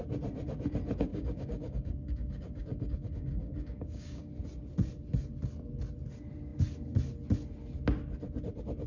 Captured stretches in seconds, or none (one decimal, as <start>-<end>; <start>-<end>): 0.0-1.1; 4.2-8.9